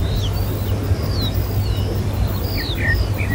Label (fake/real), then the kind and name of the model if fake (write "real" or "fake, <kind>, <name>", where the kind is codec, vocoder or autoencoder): real